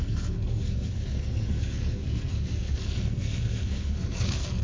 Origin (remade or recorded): remade